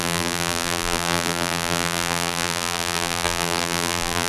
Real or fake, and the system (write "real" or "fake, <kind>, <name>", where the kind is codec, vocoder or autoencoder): fake, vocoder, BigVGAN v2